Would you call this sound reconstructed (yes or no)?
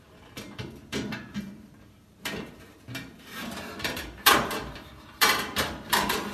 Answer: yes